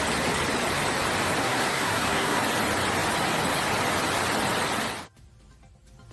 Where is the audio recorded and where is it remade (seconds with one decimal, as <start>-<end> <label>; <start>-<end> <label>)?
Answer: 0.0-1.4 recorded; 1.4-2.4 remade; 2.4-6.1 recorded